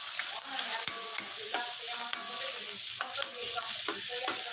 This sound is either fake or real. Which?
real